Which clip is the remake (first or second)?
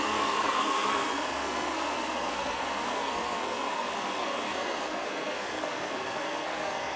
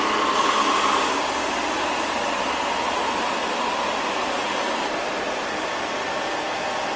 first